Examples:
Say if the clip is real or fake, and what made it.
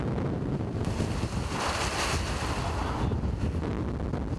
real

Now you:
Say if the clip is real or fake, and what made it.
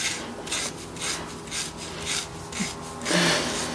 real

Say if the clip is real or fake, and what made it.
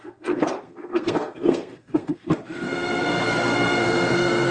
fake, codec, SNAC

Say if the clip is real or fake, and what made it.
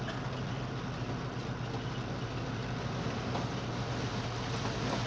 real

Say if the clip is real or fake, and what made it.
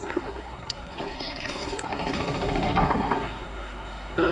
fake, codec, SNAC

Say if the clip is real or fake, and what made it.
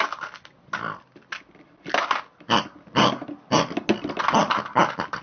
real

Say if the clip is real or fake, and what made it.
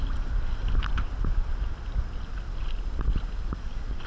real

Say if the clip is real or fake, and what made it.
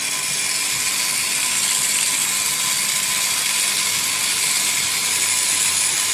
real